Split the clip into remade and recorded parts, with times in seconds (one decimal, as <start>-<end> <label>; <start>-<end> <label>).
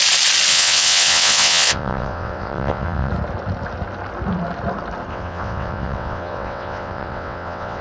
0.0-0.5 recorded; 0.5-3.1 remade; 3.1-5.1 recorded; 5.1-7.8 remade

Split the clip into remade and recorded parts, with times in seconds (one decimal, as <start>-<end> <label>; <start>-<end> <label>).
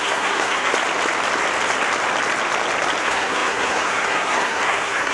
0.0-0.7 remade; 0.7-3.0 recorded; 3.0-5.1 remade